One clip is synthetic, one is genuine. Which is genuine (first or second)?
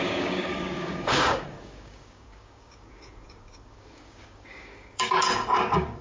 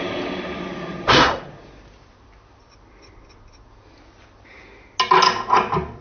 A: second